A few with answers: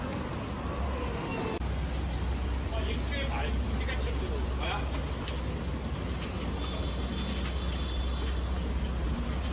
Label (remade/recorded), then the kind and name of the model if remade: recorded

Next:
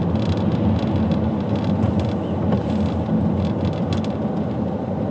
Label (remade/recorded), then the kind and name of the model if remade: recorded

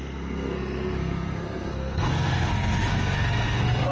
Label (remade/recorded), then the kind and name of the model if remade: remade, codec, SNAC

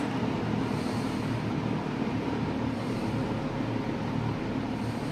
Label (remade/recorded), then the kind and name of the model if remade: recorded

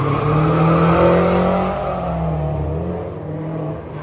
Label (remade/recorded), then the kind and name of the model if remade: recorded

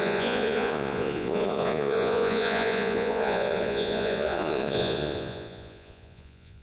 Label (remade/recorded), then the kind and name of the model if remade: remade, vocoder, Vocos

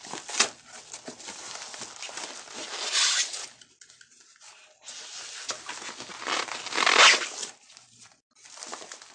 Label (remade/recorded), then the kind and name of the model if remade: recorded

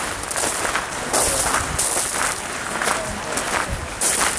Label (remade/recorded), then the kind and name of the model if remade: recorded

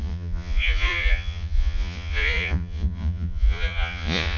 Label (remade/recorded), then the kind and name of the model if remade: remade, vocoder, Vocos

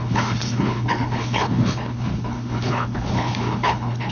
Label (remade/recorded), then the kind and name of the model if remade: remade, codec, HILCodec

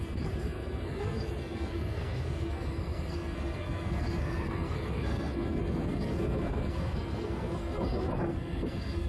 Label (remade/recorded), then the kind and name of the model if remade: remade, codec, SNAC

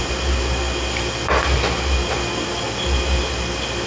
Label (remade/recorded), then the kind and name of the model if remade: recorded